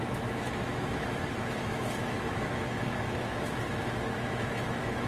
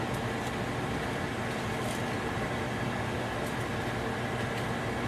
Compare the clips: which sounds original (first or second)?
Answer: second